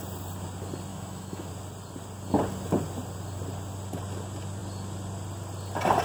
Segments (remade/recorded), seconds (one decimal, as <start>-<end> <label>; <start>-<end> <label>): 0.0-0.9 recorded; 0.9-1.5 remade; 1.5-6.0 recorded